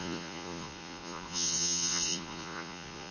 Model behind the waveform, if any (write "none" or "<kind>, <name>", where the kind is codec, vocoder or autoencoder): vocoder, Vocos